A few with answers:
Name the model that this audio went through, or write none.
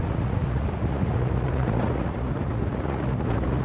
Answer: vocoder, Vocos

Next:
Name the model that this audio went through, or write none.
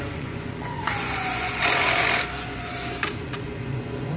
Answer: vocoder, Vocos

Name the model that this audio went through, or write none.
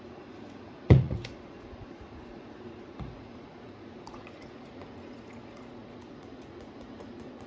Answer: vocoder, Vocos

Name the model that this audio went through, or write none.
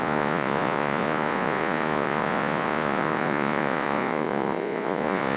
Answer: vocoder, Vocos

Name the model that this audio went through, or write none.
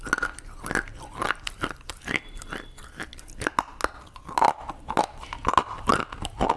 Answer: none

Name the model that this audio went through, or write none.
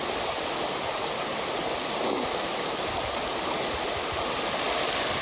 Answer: none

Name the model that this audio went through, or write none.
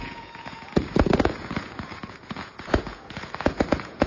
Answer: vocoder, Vocos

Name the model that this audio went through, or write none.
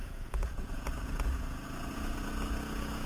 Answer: vocoder, Vocos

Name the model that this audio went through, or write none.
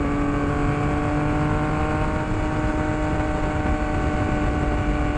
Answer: none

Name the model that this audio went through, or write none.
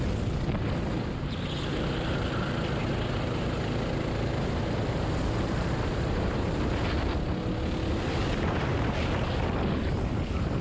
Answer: none